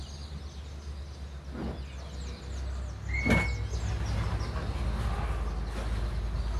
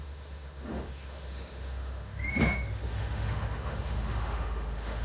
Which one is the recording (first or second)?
first